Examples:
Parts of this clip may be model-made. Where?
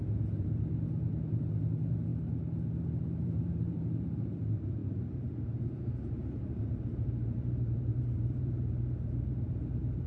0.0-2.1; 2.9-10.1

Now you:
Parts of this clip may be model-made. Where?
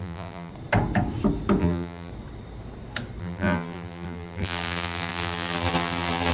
0.0-0.5; 1.6-2.1; 3.2-6.3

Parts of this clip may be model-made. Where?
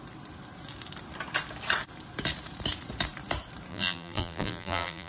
3.7-5.1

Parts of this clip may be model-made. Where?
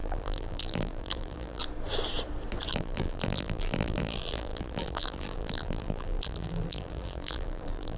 0.0-1.6; 2.7-8.0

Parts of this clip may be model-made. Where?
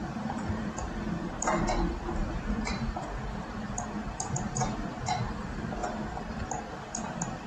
0.0-5.8; 6.7-7.5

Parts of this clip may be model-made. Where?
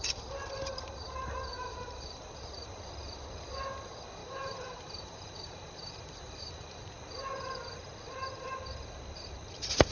1.5-2.2; 4.2-6.9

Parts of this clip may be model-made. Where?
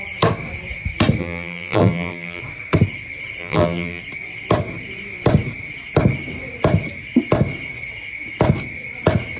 1.2-2.4; 3.4-4.0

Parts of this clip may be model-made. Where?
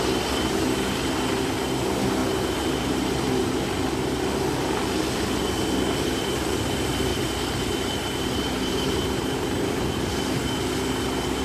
7.1-9.8